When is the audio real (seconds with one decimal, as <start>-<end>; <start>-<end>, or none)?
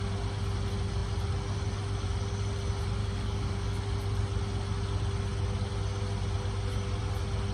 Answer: 0.0-3.0; 3.8-7.5